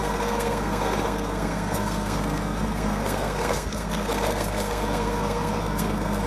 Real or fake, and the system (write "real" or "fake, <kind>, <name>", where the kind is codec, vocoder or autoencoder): fake, codec, SNAC